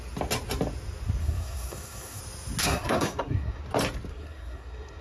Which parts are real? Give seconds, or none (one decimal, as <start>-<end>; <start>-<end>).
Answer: 0.0-1.2; 2.2-2.6; 3.6-4.1